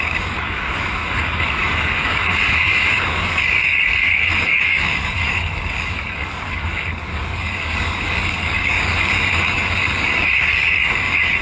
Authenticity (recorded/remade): remade